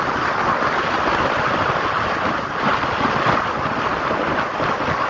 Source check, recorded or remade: recorded